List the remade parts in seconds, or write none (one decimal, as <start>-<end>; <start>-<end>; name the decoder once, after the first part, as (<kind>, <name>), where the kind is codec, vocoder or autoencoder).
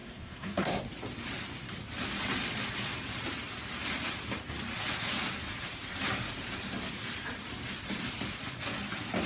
0.0-0.8 (codec, SNAC)